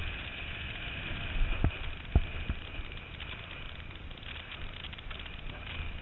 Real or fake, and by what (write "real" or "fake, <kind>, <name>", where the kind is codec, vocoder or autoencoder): real